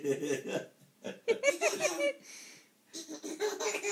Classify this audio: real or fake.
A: fake